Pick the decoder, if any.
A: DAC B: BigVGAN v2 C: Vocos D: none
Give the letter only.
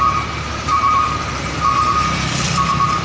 B